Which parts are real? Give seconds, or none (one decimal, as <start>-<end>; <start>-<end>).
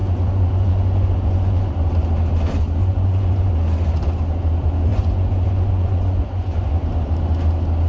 1.7-2.8; 3.5-4.9; 6.7-7.9